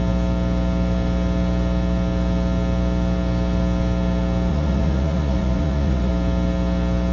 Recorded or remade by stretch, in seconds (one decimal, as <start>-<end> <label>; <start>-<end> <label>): 0.0-4.5 recorded; 4.5-6.1 remade; 6.1-7.1 recorded